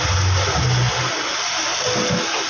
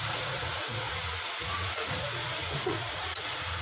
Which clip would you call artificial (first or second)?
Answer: second